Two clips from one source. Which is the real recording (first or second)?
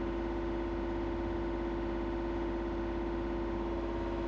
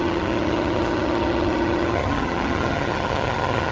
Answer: first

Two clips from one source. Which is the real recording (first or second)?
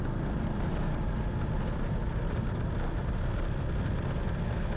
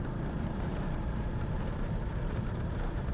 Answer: first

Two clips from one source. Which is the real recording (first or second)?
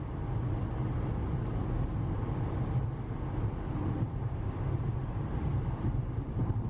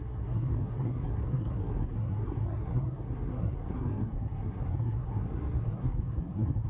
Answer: first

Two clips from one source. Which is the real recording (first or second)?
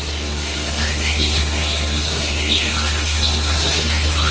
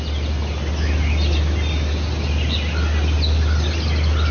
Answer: second